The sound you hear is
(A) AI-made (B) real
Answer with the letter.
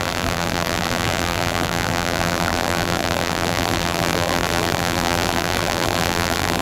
A